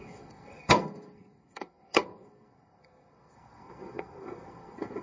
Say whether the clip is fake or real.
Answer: fake